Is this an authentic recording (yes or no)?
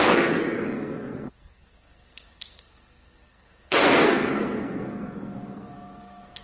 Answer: no